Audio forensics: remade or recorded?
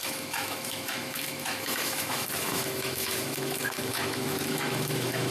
remade